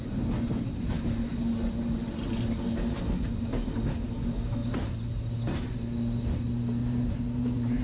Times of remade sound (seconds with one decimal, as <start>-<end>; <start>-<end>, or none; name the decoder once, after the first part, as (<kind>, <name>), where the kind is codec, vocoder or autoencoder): 4.6-5.2 (vocoder, BigVGAN v2); 6.8-7.8